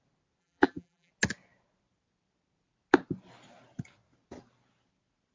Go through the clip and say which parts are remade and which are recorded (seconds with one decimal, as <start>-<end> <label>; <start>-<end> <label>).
0.0-0.4 recorded; 0.4-1.1 remade; 1.1-5.3 recorded